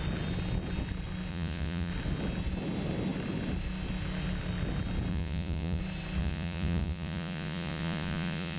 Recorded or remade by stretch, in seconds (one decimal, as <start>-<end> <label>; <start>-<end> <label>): 0.0-1.3 recorded; 1.3-1.9 remade; 1.9-5.1 recorded; 5.1-5.8 remade; 5.8-6.2 recorded; 6.2-8.6 remade